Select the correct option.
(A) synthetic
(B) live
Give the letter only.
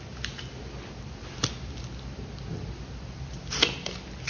B